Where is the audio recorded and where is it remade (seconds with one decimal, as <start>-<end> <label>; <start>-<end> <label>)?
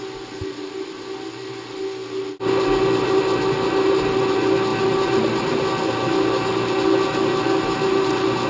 0.0-8.5 recorded